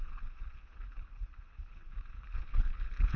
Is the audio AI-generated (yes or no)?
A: yes